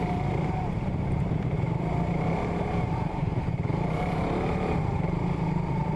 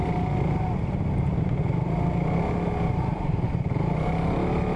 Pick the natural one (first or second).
second